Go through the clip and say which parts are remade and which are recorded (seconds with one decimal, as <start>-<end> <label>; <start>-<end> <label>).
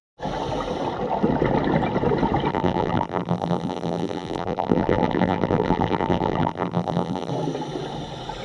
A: 0.0-2.5 recorded; 2.5-7.3 remade; 7.3-8.4 recorded